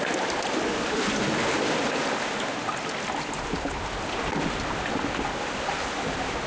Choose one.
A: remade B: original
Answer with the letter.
B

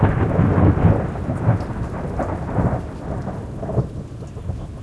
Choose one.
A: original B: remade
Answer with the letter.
A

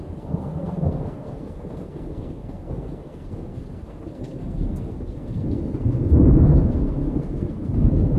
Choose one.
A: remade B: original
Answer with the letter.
A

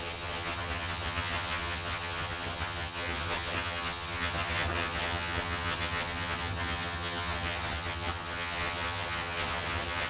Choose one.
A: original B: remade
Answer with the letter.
B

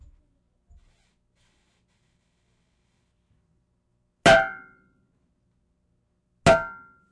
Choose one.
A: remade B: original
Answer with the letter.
B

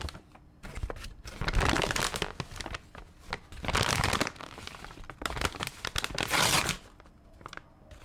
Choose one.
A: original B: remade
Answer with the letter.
A